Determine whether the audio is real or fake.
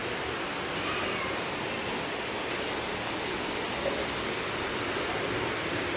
real